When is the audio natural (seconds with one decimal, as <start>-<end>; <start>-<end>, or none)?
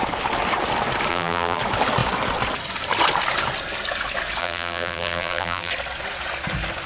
0.0-1.1; 1.6-4.4; 5.7-6.9